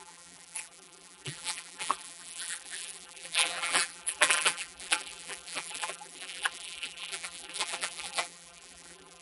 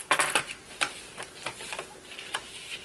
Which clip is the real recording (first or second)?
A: second